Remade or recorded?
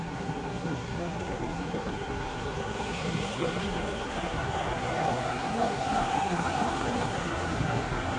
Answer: remade